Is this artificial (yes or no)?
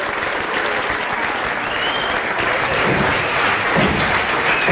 no